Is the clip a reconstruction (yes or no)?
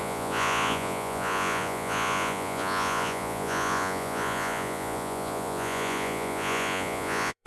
yes